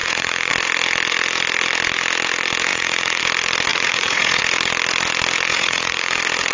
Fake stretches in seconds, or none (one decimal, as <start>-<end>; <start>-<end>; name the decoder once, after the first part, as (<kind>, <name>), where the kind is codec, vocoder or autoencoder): 0.0-0.5 (vocoder, Vocos); 2.7-3.2; 3.7-4.4; 5.5-6.1